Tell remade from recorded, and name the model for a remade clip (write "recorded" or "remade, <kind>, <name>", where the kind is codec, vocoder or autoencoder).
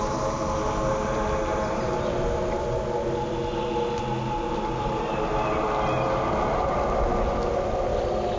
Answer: recorded